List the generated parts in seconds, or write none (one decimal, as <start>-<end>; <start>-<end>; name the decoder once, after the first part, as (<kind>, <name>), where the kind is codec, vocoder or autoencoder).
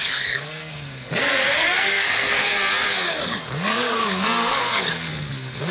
0.0-2.5 (codec, SNAC); 3.1-5.7